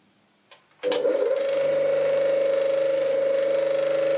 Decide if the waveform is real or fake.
real